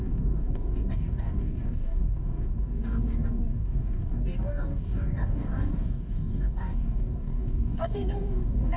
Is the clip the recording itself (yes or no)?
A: no